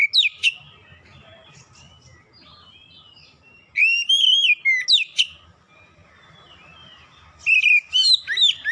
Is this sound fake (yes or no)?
no